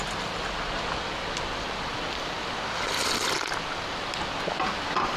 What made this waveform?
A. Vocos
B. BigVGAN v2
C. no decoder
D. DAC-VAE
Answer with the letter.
C